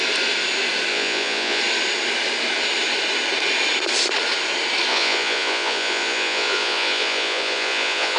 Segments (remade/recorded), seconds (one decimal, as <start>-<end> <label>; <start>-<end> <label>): 0.0-0.9 recorded; 0.9-1.6 remade; 1.6-4.9 recorded; 4.9-8.2 remade